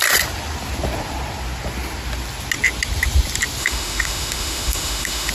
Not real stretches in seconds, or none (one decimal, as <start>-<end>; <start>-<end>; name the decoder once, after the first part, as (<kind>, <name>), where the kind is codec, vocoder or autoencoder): 3.6-5.3 (autoencoder, DAC-VAE)